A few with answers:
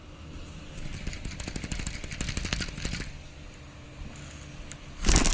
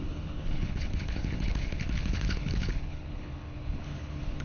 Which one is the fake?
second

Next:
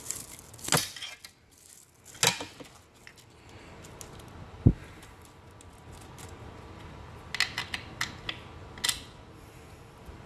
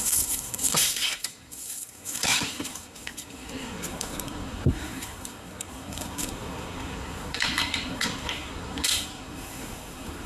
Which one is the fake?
second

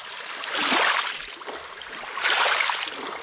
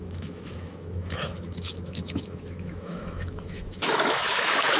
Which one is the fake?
second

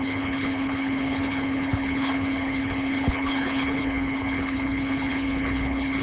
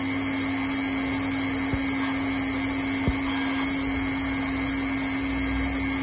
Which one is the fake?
first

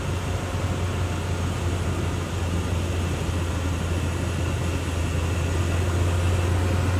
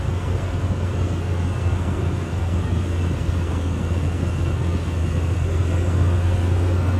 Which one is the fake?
second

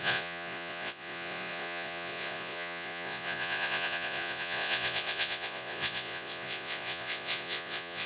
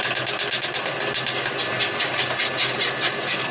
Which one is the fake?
first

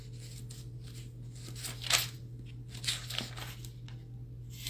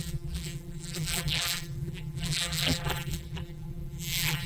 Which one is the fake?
second